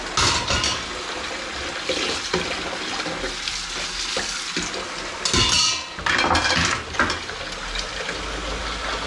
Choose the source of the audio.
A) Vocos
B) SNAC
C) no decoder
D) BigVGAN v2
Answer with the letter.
C